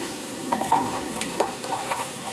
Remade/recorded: remade